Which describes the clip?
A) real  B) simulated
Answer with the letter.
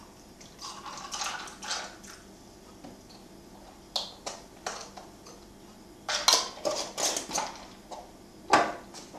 A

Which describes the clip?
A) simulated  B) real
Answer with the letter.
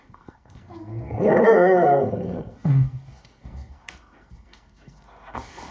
A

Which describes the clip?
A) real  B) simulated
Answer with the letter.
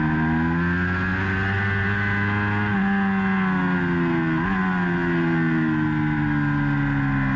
A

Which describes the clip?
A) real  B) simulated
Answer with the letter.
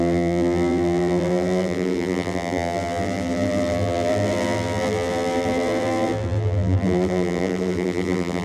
B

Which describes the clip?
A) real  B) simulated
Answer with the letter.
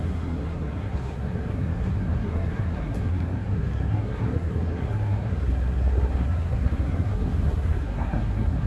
B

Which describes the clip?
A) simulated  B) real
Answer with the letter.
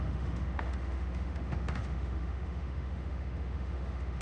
A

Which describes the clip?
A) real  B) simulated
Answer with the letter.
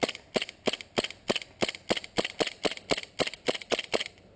A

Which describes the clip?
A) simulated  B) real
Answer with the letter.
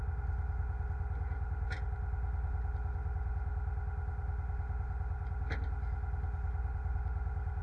B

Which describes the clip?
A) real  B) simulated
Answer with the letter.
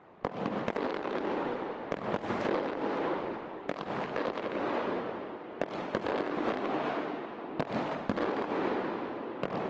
A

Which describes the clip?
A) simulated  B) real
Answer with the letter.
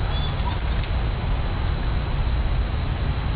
B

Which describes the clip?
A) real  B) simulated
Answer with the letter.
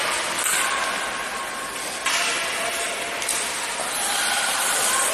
B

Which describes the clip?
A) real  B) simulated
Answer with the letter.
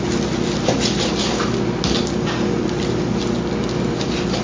A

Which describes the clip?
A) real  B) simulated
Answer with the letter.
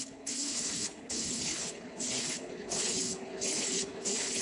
B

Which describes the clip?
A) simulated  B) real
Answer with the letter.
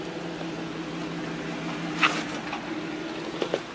B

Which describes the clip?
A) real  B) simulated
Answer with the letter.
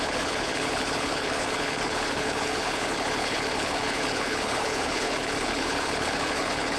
B